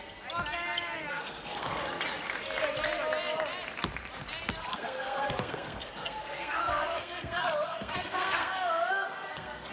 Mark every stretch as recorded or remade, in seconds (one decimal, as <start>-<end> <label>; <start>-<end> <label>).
0.0-1.1 recorded; 1.1-1.8 remade; 1.8-4.6 recorded; 4.6-9.7 remade

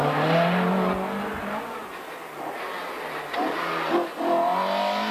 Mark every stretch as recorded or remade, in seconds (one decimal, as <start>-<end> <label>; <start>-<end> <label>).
0.0-5.1 recorded

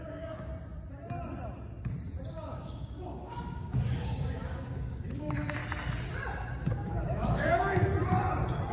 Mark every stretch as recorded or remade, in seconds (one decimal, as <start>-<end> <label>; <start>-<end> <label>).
0.0-0.5 remade; 0.5-2.3 recorded; 2.3-5.6 remade; 5.6-6.7 recorded; 6.7-7.9 remade; 7.9-8.7 recorded

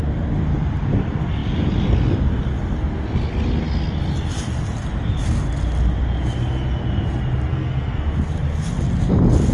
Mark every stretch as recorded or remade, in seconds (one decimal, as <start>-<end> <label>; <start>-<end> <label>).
0.0-7.5 recorded; 7.5-8.1 remade; 8.1-9.5 recorded

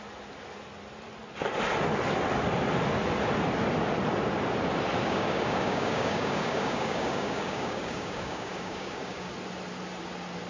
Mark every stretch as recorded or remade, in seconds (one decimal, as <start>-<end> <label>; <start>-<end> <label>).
0.0-5.0 recorded; 5.0-9.3 remade; 9.3-10.5 recorded

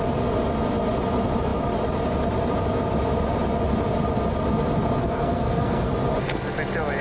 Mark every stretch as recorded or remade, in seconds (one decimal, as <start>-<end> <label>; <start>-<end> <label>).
0.0-5.0 recorded; 5.0-5.9 remade; 5.9-7.0 recorded

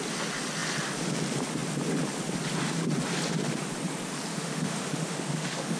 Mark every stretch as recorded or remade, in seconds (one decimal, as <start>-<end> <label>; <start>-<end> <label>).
0.0-4.3 recorded; 4.3-5.8 remade

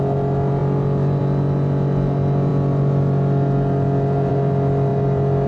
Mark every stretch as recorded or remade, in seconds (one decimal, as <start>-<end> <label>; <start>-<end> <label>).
0.0-5.5 recorded